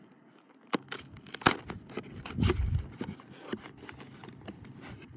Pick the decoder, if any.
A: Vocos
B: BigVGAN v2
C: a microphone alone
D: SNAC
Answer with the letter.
C